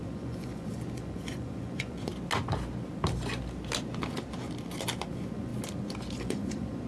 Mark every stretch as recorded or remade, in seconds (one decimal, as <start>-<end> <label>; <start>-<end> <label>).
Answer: 0.0-2.1 remade; 2.1-5.1 recorded; 5.1-5.5 remade; 5.5-6.2 recorded; 6.2-6.9 remade